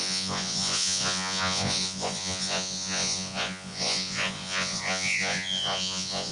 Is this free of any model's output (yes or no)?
no